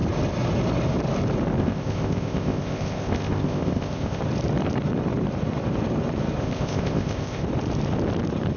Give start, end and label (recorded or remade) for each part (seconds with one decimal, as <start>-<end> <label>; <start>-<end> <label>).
0.0-1.6 recorded; 1.6-4.2 remade; 4.2-6.4 recorded; 6.4-7.4 remade; 7.4-8.6 recorded